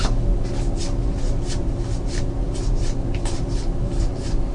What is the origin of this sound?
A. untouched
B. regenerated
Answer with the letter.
A